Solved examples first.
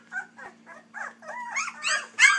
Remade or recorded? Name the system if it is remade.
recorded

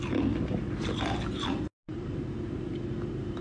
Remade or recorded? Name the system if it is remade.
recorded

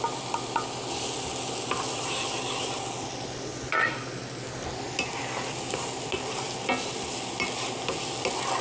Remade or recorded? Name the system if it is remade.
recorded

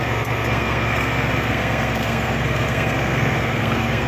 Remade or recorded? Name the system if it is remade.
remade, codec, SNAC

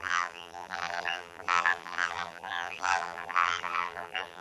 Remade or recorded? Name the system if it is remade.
remade, vocoder, BigVGAN v2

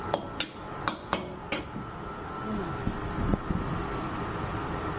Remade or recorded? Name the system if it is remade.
recorded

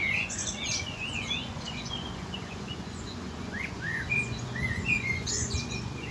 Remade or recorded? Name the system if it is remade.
remade, vocoder, Vocos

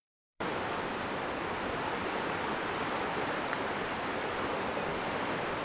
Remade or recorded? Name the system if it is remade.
remade, vocoder, BigVGAN v2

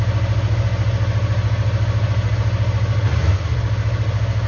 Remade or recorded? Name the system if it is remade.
recorded